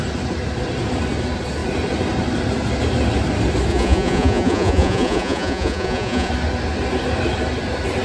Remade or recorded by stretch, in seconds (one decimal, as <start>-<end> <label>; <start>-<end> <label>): 0.0-3.7 recorded; 3.7-6.3 remade; 6.3-8.0 recorded